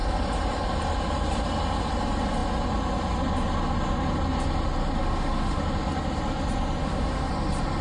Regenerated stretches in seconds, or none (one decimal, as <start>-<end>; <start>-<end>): 5.0-5.6; 6.8-7.3